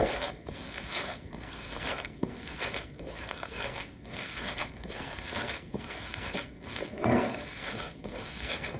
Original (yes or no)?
no